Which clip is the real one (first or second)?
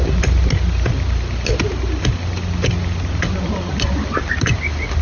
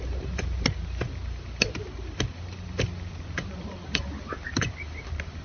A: first